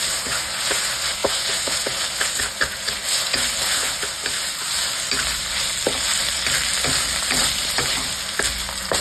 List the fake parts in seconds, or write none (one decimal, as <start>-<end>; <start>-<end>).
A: 7.4-8.1